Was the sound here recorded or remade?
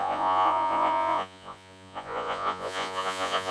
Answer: remade